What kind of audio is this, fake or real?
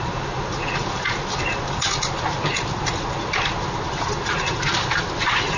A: real